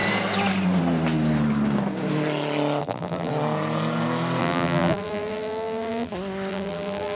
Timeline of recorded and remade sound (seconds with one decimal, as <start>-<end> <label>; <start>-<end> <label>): 0.0-2.8 recorded; 2.8-3.3 remade; 3.3-4.4 recorded; 4.4-6.1 remade; 6.1-6.5 recorded; 6.5-7.2 remade